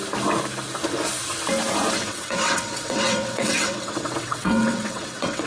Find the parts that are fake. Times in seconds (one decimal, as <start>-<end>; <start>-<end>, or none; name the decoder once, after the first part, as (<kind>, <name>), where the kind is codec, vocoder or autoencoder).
2.0-5.5 (vocoder, WaveNeXt)